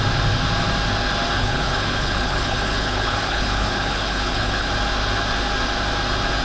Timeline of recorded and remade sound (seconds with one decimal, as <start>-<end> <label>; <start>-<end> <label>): 0.0-1.4 recorded; 1.4-4.7 remade; 4.7-6.4 recorded